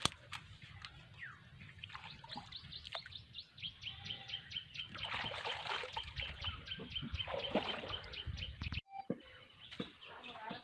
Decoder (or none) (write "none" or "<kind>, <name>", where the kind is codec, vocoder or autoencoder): none